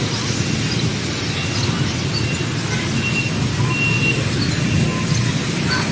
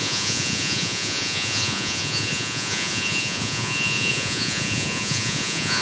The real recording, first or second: first